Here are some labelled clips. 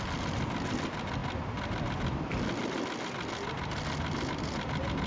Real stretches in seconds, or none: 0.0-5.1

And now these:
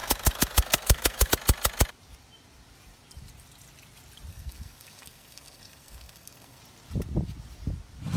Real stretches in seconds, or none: 1.3-4.3; 6.6-8.2

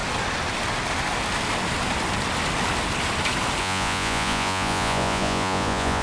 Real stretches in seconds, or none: 0.0-3.6

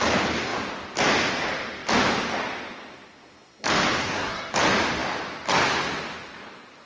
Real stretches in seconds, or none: 0.0-4.0; 4.5-6.9

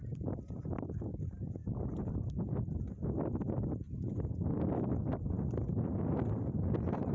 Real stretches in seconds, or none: 0.0-7.1